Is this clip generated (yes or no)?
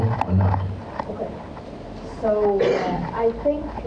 no